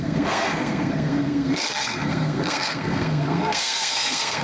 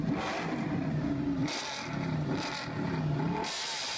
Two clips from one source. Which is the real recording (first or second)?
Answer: second